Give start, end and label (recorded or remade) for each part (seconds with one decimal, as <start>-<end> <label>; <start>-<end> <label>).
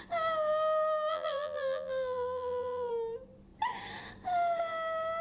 0.0-1.1 recorded; 1.1-2.9 remade; 2.9-5.2 recorded